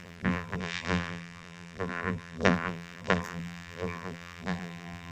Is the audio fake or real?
fake